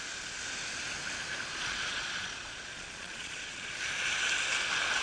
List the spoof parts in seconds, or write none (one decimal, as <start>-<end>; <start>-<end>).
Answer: 1.5-3.7